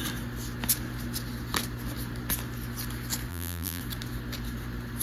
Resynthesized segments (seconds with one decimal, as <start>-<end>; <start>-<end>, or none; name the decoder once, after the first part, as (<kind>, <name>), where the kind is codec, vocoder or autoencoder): 3.3-3.8 (vocoder, BigVGAN v2)